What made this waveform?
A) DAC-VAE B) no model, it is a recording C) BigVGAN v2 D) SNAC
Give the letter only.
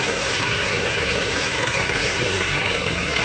D